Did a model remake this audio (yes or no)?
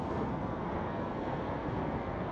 yes